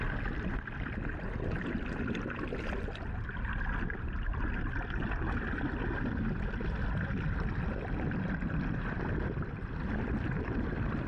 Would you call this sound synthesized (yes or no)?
no